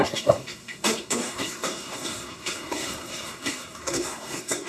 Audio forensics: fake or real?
fake